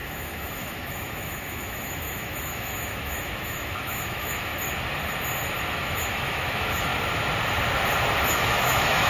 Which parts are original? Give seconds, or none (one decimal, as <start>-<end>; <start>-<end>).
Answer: 4.5-5.7; 6.9-8.3